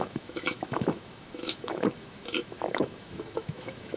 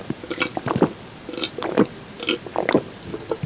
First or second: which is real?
second